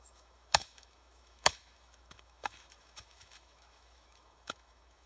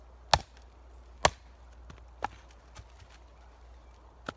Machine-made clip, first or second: first